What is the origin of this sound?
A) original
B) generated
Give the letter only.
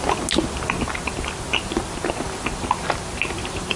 A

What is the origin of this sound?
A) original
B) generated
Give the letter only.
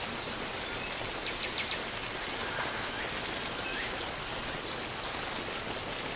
A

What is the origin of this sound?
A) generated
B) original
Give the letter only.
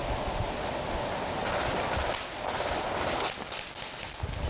B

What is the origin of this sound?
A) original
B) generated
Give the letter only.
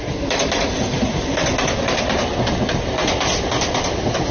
A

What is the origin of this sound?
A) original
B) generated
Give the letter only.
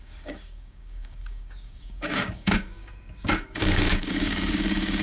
B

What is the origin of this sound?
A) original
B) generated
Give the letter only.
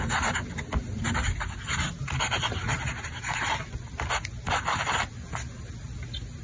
A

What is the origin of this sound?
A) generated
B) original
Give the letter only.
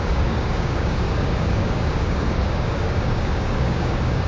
A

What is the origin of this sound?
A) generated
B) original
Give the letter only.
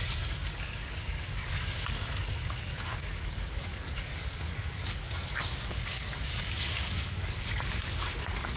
A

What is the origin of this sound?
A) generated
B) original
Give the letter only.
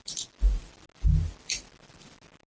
B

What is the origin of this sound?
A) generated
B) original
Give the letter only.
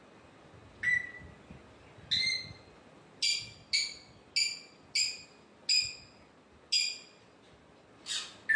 B